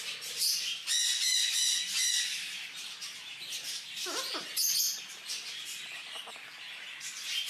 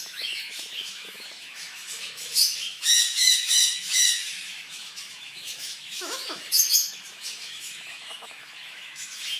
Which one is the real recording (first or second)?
first